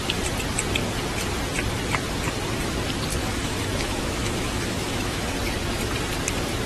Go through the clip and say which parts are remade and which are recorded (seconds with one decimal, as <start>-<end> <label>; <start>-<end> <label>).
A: 0.0-3.1 recorded; 3.1-5.3 remade; 5.3-6.7 recorded